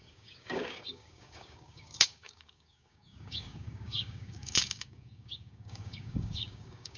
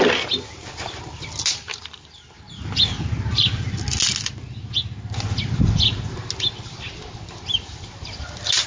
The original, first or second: second